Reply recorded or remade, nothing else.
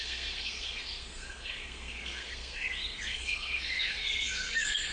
remade